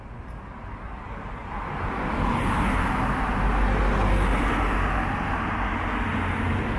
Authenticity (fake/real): real